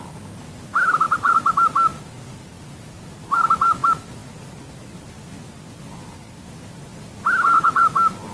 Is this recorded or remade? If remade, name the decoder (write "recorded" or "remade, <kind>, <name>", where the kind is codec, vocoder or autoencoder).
recorded